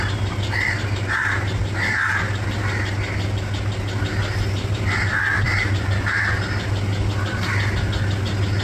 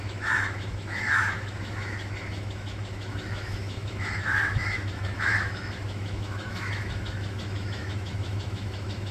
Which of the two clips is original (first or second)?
first